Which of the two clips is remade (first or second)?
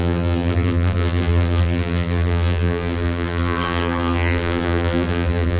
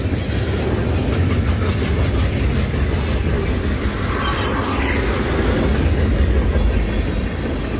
first